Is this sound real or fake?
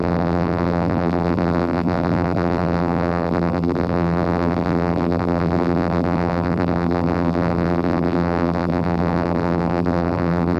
fake